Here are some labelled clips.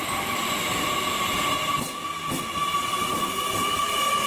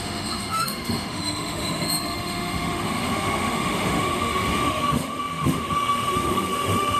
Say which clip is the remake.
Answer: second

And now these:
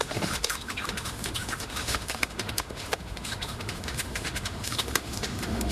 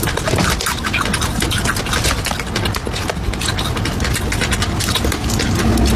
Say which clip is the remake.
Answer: first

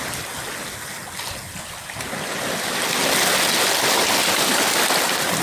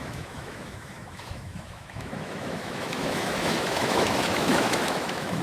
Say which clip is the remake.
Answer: second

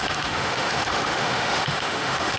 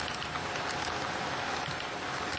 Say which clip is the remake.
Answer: first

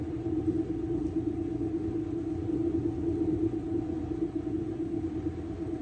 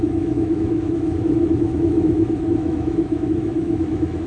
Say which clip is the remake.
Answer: second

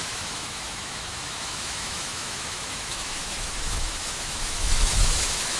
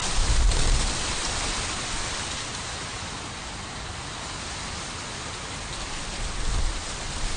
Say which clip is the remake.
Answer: first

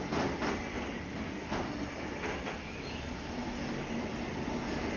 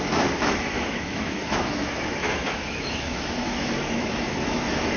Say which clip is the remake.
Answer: second